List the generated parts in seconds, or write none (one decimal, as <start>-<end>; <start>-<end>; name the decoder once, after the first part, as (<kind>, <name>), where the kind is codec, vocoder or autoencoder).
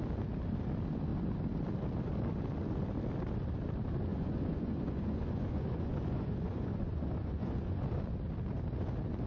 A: 4.1-7.8 (vocoder, Vocos)